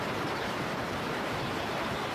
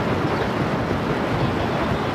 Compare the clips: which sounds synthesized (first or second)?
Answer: first